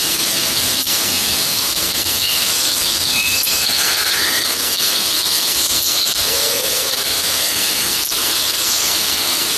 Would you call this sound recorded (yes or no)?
no